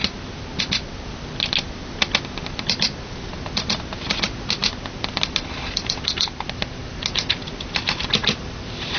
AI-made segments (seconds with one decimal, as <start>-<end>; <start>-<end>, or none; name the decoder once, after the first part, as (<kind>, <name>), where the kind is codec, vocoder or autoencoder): 8.2-9.0 (vocoder, BigVGAN v2)